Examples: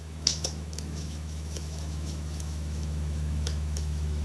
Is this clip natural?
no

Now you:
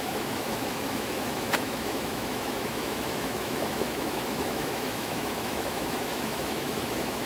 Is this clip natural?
no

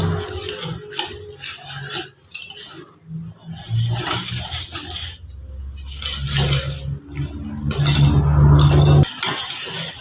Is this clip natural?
yes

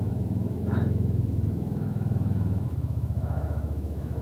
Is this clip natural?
no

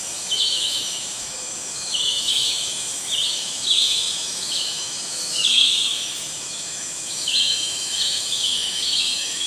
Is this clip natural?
no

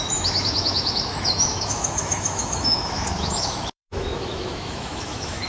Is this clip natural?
no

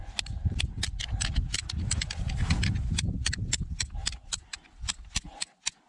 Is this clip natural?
yes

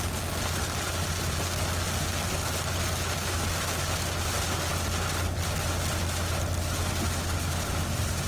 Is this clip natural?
yes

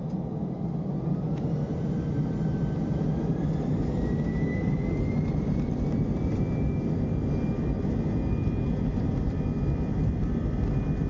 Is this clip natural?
yes